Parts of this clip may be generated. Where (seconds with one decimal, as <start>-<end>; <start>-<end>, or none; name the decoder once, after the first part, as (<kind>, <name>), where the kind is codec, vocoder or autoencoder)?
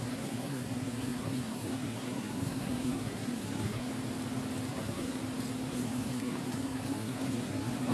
0.0-3.9 (codec, SNAC); 4.7-5.2; 5.7-7.9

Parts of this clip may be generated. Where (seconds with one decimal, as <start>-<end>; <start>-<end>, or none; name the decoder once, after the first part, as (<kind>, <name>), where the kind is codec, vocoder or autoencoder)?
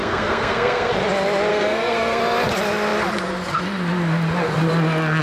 0.0-0.9 (codec, SNAC); 1.5-2.2